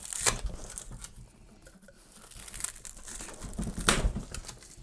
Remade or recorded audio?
recorded